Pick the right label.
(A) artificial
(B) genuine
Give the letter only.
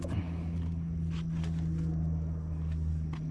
B